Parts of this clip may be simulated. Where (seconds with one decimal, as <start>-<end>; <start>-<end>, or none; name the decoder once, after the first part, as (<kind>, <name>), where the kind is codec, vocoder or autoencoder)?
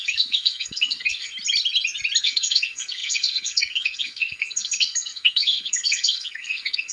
0.0-1.3 (codec, SNAC); 2.2-6.9